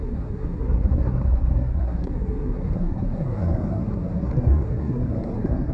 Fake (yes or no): yes